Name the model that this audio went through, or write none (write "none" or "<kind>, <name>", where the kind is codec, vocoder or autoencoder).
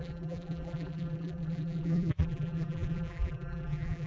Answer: vocoder, BigVGAN v2